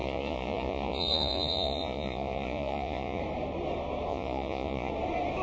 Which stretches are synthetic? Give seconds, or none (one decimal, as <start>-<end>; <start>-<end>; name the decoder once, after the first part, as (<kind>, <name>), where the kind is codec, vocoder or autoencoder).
0.0-3.2 (vocoder, Vocos); 4.1-4.9